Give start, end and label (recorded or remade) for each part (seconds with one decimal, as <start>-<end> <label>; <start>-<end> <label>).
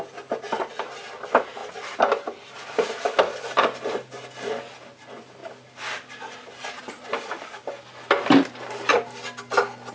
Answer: 0.0-1.6 recorded; 1.6-2.9 remade; 2.9-9.9 recorded